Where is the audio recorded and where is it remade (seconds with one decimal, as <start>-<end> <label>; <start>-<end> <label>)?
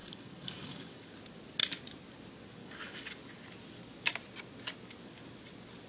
0.0-1.1 remade; 1.1-2.6 recorded; 2.6-3.1 remade; 3.1-5.9 recorded